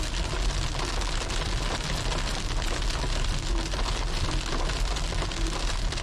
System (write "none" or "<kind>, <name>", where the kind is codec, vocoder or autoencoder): none